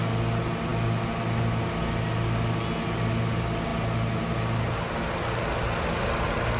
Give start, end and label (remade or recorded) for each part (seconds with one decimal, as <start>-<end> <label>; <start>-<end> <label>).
0.0-6.6 recorded